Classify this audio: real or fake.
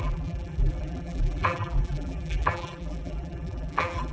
fake